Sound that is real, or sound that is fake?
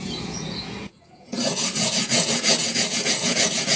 fake